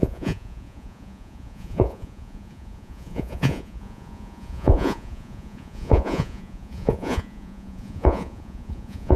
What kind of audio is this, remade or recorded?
remade